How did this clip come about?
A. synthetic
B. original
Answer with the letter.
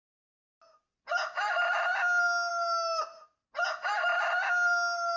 B